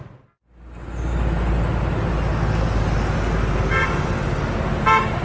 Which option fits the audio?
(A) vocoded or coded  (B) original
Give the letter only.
B